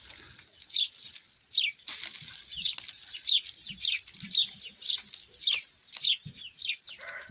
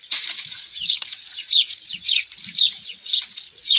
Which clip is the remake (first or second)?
second